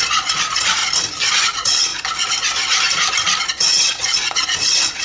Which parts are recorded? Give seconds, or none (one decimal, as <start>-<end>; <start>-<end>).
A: 0.8-1.3; 1.9-3.4